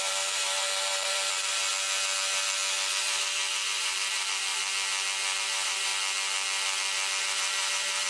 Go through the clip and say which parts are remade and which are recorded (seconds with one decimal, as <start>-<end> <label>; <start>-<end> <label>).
0.0-1.7 remade; 1.7-3.0 recorded; 3.0-4.6 remade; 4.6-5.4 recorded; 5.4-5.9 remade; 5.9-7.2 recorded; 7.2-8.1 remade